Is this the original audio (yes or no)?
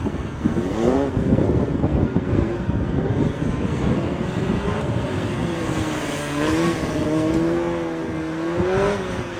no